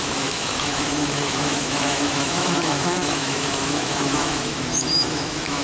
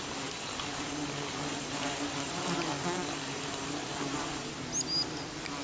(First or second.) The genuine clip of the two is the second